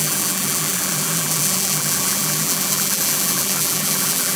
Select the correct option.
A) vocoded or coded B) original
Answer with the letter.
A